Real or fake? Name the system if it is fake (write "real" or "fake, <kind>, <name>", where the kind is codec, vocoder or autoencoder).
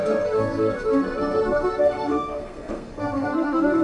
fake, codec, SNAC